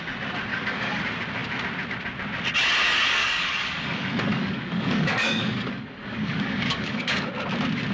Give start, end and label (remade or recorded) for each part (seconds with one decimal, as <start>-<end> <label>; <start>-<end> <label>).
0.0-0.5 recorded; 0.5-1.0 remade; 1.0-2.8 recorded; 2.8-7.3 remade; 7.3-7.9 recorded